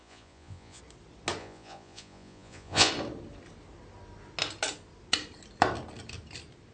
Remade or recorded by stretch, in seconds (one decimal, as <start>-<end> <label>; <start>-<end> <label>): 0.0-0.8 remade; 0.8-1.4 recorded; 1.4-2.9 remade; 2.9-6.7 recorded